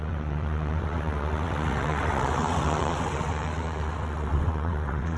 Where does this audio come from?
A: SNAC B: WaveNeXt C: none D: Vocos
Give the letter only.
B